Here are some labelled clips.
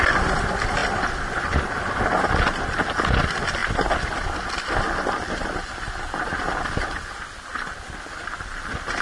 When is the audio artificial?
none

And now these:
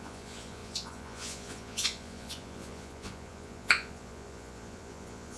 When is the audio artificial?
0.0-5.4 (vocoder, Vocos)